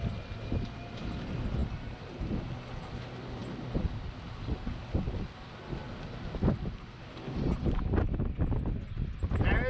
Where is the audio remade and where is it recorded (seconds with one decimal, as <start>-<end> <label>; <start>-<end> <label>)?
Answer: 0.0-1.6 recorded; 1.6-2.5 remade; 2.5-9.7 recorded